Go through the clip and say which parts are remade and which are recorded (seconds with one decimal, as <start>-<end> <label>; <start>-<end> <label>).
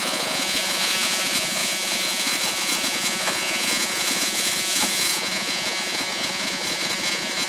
0.0-7.5 remade